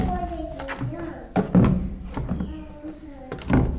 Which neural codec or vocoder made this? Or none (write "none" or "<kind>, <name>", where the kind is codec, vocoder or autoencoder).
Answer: none